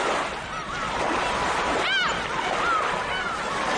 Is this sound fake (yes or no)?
no